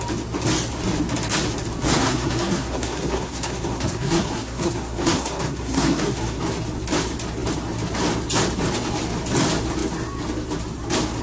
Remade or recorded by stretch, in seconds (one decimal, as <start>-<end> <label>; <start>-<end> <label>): 0.0-1.9 recorded; 1.9-6.4 remade; 6.4-11.2 recorded